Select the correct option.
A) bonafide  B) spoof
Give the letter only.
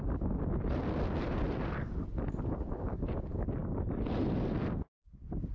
A